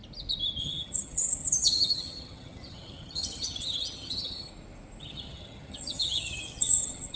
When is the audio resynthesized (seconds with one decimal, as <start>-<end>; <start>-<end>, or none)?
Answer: 0.6-4.5; 5.0-7.2